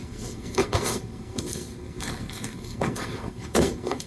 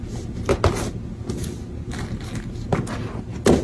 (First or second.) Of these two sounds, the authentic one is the second